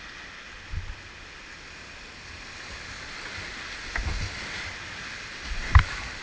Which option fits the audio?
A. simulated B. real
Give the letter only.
B